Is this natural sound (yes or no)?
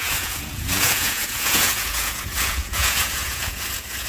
no